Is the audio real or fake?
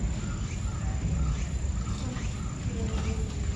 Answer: real